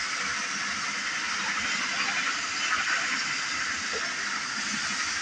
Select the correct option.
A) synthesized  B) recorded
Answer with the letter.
B